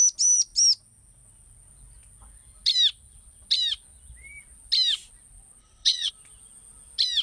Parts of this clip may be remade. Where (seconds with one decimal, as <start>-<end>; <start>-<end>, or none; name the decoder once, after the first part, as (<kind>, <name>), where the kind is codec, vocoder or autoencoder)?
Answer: 5.6-6.1 (vocoder, WaveNeXt)